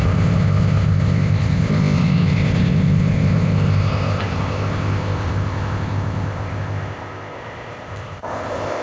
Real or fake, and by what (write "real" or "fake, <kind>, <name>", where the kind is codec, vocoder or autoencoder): fake, codec, ZipCodec